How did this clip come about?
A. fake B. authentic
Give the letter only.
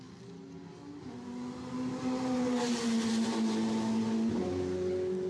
B